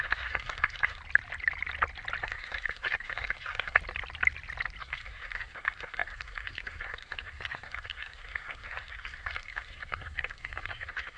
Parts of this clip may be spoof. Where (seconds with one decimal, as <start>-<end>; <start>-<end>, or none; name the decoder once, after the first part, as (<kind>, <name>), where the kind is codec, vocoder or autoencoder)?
0.0-1.0 (codec, SNAC); 2.2-3.8; 4.8-11.2